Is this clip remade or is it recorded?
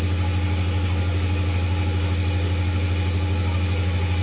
recorded